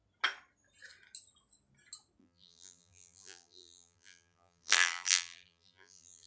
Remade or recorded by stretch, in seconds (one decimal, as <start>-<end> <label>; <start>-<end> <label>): 0.0-2.2 recorded; 2.2-6.3 remade